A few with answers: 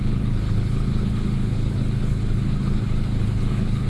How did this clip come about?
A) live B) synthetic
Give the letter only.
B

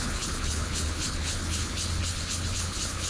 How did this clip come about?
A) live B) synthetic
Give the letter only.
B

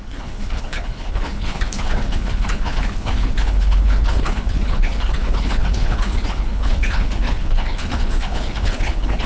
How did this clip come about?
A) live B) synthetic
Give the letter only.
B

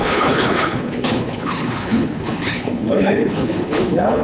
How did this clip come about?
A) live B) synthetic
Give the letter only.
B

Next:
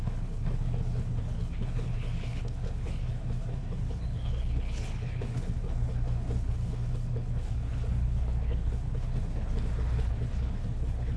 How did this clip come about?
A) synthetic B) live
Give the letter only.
A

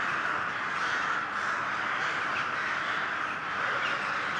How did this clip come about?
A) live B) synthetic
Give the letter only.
A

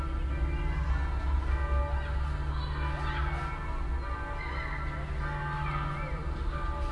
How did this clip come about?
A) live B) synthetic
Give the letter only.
A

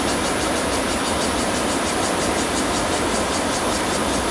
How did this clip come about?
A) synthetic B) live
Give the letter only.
B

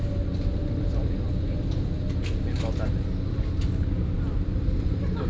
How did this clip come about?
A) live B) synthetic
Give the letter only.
A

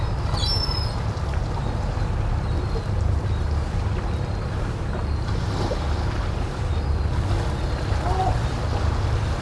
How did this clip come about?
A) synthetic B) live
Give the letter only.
B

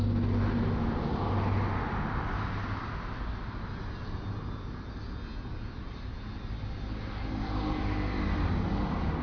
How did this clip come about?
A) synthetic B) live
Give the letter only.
B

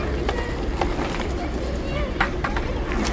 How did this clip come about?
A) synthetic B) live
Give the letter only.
B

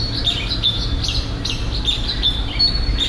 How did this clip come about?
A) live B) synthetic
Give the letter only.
A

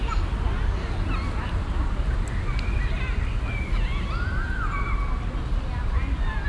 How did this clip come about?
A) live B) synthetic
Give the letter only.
A